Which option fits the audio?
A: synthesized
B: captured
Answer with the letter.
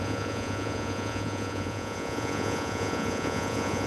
A